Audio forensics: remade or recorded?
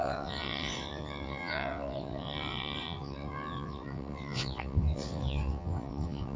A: remade